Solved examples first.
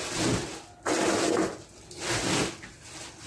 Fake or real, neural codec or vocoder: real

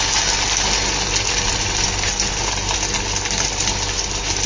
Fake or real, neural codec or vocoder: real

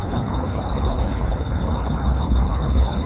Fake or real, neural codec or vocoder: fake, codec, HILCodec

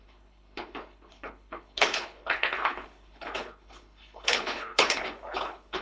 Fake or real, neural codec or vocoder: fake, codec, HILCodec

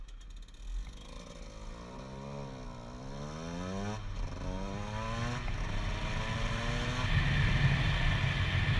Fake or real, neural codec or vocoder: real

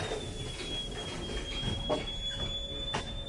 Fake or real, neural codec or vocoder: real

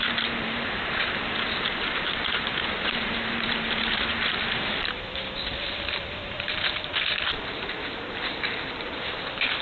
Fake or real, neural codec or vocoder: fake, vocoder, BigVGAN v2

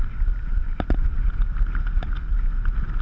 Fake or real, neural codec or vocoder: real